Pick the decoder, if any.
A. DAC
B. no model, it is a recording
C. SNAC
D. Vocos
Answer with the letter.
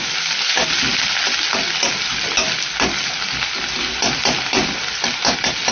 B